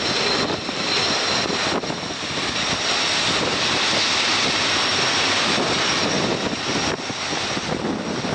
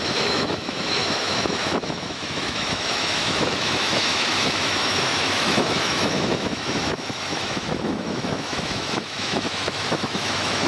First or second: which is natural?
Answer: first